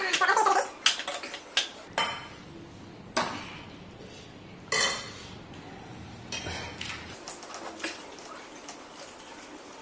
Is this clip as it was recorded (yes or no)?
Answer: yes